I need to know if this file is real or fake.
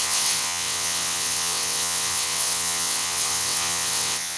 fake